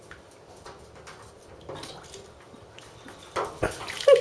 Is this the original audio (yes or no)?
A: yes